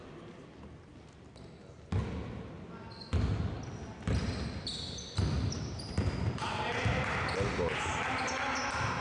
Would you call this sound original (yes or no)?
yes